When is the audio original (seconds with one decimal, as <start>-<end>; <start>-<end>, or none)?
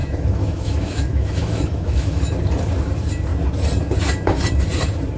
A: 2.2-5.2